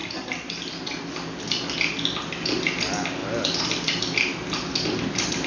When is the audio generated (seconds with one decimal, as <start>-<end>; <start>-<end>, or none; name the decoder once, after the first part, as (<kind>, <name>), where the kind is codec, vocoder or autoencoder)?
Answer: none